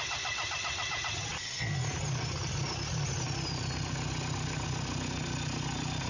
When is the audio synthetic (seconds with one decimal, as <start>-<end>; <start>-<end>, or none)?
none